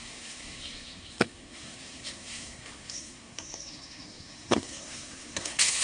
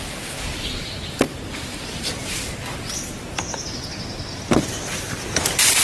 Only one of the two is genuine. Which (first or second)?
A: second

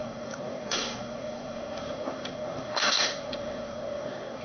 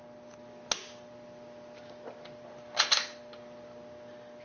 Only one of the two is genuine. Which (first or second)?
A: second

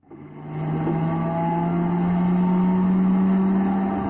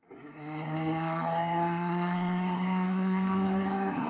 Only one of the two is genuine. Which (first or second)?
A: first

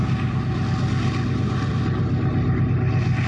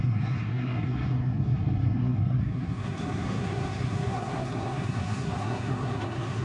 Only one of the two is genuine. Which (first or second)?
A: first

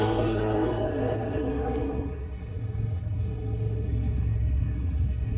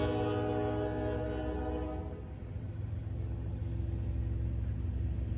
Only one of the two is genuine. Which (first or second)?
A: second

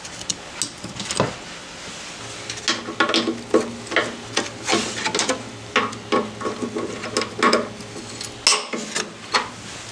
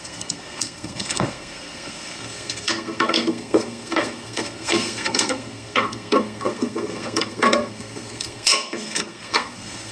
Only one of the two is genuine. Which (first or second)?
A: first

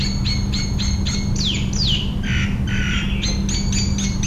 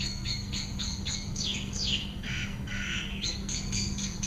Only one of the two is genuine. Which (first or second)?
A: first